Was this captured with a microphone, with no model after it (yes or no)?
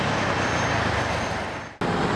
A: yes